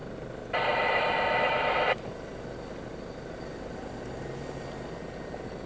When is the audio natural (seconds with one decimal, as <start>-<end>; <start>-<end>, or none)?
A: 0.0-5.7